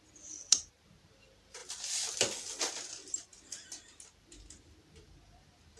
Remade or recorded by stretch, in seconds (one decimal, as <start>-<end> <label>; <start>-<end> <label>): 0.0-5.8 recorded